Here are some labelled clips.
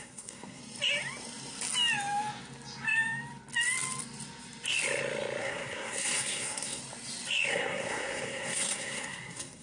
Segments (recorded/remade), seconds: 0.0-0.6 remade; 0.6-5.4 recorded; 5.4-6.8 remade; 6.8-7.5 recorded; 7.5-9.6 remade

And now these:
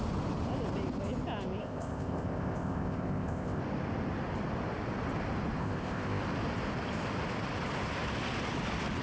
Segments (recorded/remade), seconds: 0.0-1.6 recorded; 1.6-3.6 remade; 3.6-5.6 recorded; 5.6-6.2 remade; 6.2-9.0 recorded

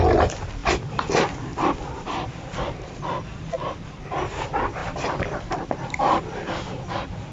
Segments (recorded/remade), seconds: 0.0-7.3 recorded

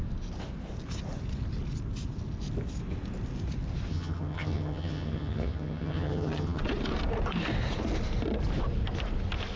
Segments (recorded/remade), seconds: 0.0-3.9 recorded; 3.9-6.6 remade; 6.6-9.6 recorded

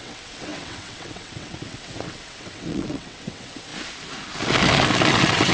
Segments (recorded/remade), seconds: 0.0-3.7 remade; 3.7-5.1 recorded; 5.1-5.5 remade

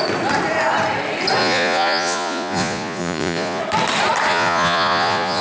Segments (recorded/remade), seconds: 0.0-1.4 recorded; 1.4-3.6 remade; 3.6-4.3 recorded; 4.3-5.4 remade

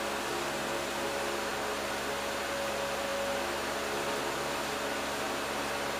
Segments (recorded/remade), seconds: 0.0-1.5 recorded; 1.5-2.4 remade; 2.4-6.0 recorded

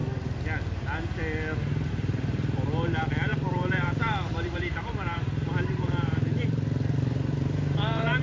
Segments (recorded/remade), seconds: 0.0-1.9 recorded; 1.9-8.2 remade